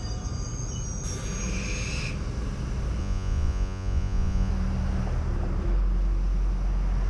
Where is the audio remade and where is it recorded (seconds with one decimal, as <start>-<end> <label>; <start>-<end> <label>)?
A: 0.0-3.0 recorded; 3.0-4.5 remade; 4.5-7.1 recorded